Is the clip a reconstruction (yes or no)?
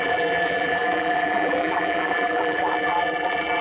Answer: yes